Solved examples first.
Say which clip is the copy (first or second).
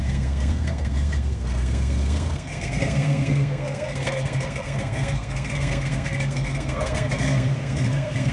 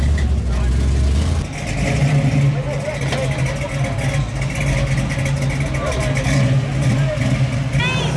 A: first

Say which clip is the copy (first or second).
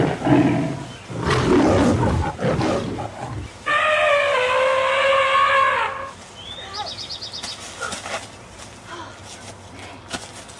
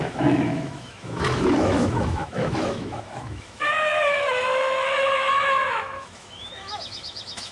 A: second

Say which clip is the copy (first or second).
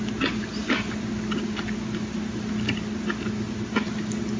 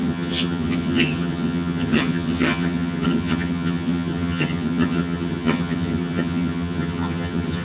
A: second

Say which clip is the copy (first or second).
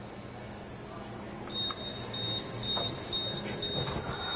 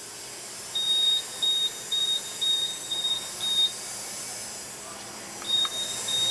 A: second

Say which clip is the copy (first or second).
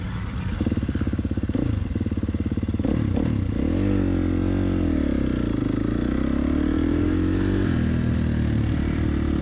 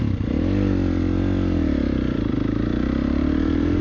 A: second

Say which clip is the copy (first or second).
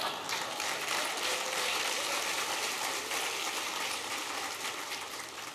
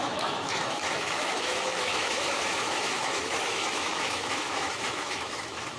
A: second